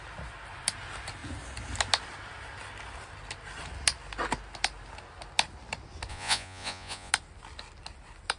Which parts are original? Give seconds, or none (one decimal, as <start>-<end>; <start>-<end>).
0.0-6.1; 7.1-8.4